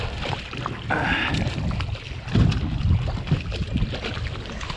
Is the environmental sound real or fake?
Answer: real